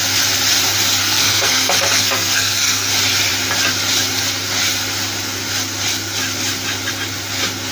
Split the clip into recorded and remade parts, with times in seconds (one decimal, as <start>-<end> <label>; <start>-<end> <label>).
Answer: 0.0-1.0 recorded; 1.0-2.9 remade; 2.9-7.7 recorded